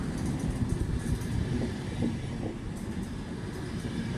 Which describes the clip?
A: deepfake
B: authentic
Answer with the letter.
B